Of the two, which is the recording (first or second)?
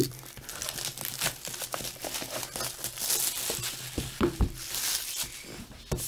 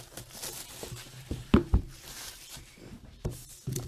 first